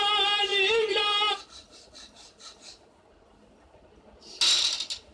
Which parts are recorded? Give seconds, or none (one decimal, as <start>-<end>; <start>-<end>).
0.0-5.1

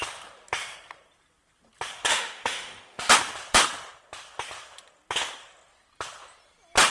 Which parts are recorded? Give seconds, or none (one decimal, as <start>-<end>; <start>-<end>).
0.0-2.1; 3.1-6.9